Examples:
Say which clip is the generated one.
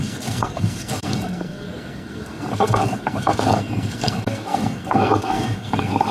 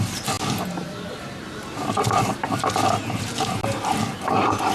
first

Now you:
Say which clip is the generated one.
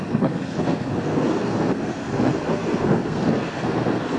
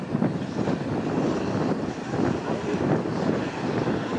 first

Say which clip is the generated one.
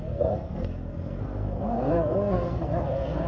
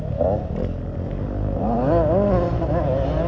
first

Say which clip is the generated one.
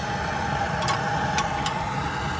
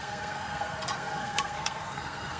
second